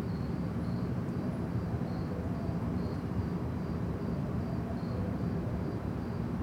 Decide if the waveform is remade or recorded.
remade